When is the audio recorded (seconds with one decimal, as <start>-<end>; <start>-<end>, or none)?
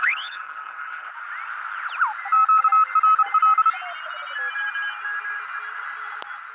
1.1-6.5